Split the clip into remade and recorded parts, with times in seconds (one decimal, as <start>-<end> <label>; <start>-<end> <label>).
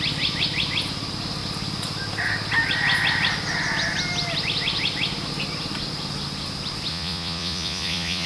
0.0-6.9 recorded; 6.9-8.3 remade